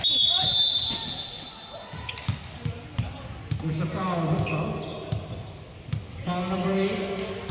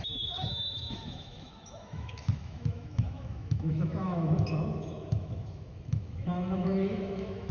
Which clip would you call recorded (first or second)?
first